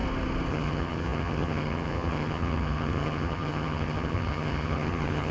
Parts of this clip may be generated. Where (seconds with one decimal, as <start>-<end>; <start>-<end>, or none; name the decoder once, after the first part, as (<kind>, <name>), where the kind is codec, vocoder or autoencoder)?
0.5-5.3 (vocoder, HiFi-GAN)